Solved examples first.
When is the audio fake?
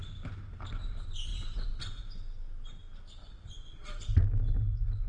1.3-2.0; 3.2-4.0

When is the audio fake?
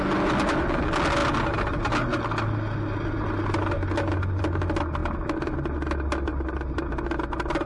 none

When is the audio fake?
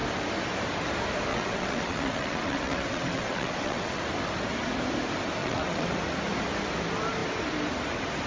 1.3-4.0; 5.4-5.9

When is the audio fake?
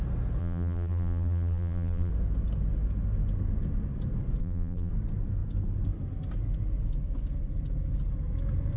0.4-2.1; 4.4-4.9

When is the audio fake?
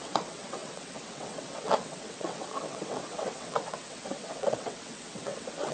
0.0-5.7